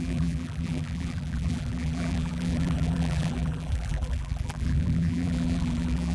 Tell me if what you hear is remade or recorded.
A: remade